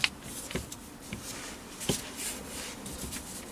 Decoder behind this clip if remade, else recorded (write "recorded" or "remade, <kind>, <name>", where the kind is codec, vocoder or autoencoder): recorded